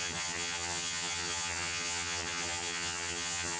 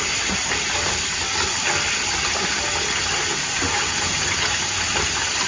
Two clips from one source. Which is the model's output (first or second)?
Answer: first